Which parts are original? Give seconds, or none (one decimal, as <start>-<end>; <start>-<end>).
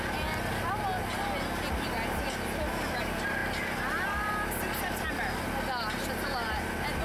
0.0-7.0